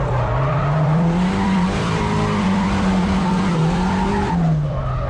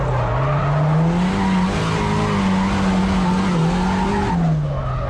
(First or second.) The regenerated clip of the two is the first